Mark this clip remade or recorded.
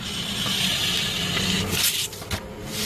recorded